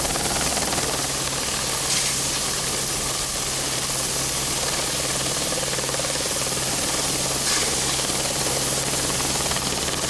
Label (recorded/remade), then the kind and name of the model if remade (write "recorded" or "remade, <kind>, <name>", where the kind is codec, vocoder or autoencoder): recorded